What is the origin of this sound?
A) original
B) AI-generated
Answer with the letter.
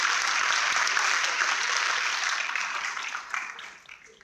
B